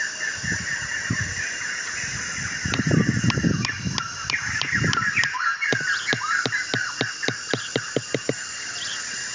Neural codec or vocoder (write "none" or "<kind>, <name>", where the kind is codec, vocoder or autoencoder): none